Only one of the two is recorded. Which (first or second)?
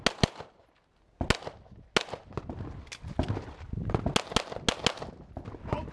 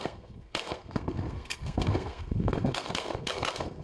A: first